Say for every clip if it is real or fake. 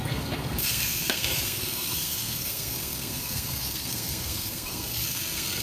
fake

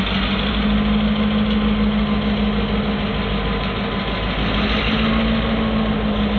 real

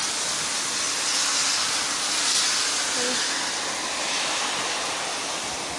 real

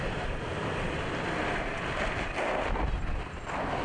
real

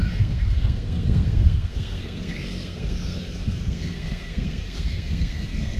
fake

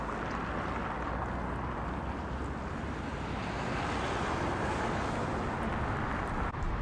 real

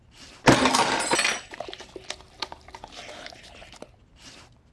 real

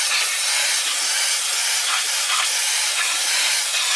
real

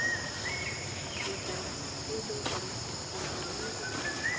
real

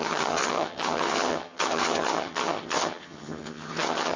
fake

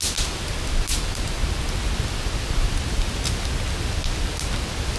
real